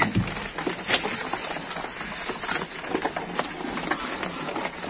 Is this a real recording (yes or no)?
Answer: yes